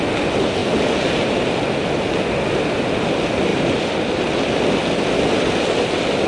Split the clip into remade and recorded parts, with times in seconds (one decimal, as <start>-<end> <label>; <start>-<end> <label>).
0.0-3.5 recorded; 3.5-4.1 remade; 4.1-6.3 recorded